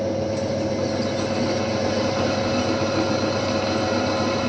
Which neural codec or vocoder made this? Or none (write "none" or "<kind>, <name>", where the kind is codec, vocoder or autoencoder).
none